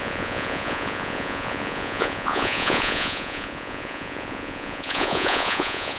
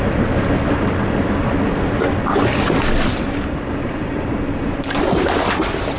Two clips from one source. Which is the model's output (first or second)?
first